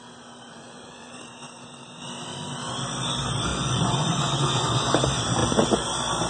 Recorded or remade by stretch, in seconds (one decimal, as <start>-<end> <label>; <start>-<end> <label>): 0.0-0.5 recorded; 0.5-1.2 remade; 1.2-3.5 recorded; 3.5-4.9 remade; 4.9-6.3 recorded